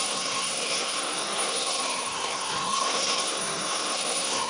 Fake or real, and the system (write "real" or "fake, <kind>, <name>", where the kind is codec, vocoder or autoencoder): fake, codec, SNAC